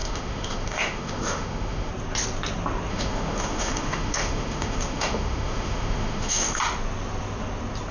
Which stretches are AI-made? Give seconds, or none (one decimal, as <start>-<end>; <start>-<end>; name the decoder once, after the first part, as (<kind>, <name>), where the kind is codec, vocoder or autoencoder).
0.0-1.9 (autoencoder, DAC-VAE); 2.9-6.6